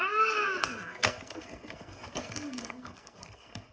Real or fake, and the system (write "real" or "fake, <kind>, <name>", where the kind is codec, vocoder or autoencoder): fake, codec, SNAC